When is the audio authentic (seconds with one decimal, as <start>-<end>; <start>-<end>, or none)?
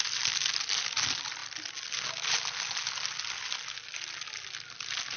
0.0-5.2